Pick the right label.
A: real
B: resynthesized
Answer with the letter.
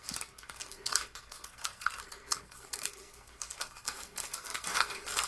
B